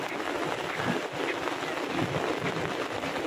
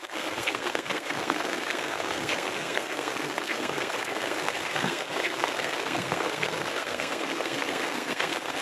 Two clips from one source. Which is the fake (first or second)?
second